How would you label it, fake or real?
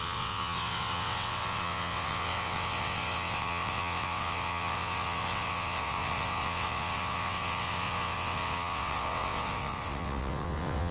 fake